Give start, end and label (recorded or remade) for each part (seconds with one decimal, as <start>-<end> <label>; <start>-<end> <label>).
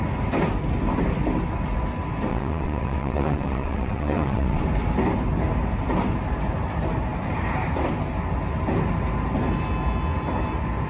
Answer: 0.0-2.3 recorded; 2.3-4.6 remade; 4.6-10.9 recorded